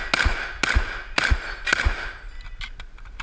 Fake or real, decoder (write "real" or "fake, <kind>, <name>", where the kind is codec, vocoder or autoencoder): real